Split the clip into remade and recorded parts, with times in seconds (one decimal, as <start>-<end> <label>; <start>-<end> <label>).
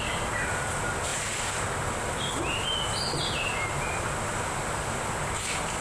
0.0-5.8 recorded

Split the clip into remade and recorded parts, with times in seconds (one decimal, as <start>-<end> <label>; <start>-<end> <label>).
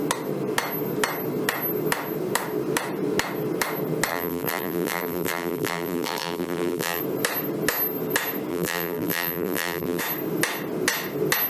0.0-4.1 recorded; 4.1-7.0 remade; 7.0-8.5 recorded; 8.5-10.0 remade; 10.0-11.5 recorded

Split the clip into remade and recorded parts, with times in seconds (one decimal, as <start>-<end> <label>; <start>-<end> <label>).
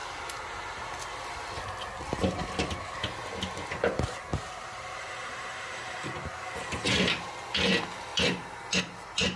0.0-1.5 remade; 1.5-4.3 recorded; 4.3-6.1 remade; 6.1-9.4 recorded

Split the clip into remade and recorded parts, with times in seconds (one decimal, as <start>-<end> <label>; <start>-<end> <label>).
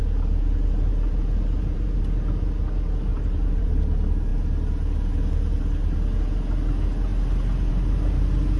0.0-0.9 recorded; 0.9-2.0 remade; 2.0-3.1 recorded; 3.1-3.8 remade; 3.8-8.6 recorded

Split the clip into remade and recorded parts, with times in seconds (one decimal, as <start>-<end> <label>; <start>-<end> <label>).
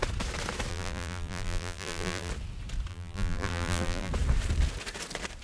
0.0-0.7 recorded; 0.7-2.3 remade; 2.3-2.9 recorded; 2.9-4.1 remade; 4.1-5.4 recorded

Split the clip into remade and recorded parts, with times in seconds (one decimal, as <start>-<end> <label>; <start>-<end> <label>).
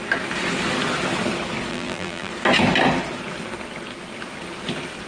0.0-1.7 recorded; 1.7-2.3 remade; 2.3-5.1 recorded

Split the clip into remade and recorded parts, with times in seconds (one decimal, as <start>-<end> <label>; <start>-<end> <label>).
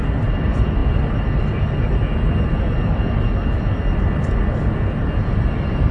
0.0-5.9 recorded